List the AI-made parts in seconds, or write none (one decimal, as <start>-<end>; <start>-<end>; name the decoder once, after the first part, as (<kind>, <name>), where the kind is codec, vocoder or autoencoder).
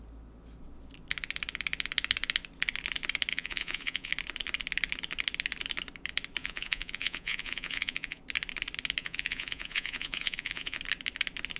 3.3-4.1 (vocoder, Vocos); 6.4-8.2; 9.0-10.8